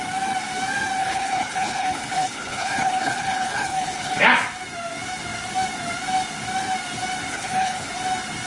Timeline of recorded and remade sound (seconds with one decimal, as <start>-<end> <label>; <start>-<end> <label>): 0.0-1.0 recorded; 1.0-4.2 remade; 4.2-7.3 recorded; 7.3-7.9 remade; 7.9-8.5 recorded